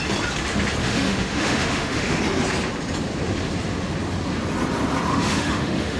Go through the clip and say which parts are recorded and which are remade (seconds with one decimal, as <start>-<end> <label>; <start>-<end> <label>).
0.0-0.8 recorded; 0.8-2.2 remade; 2.2-5.1 recorded; 5.1-6.0 remade